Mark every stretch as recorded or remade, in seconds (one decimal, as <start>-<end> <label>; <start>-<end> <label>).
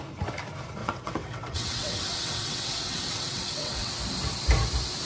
0.0-0.8 recorded; 0.8-3.9 remade; 3.9-5.1 recorded